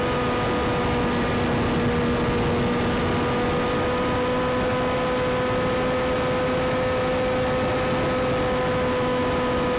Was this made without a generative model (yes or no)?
yes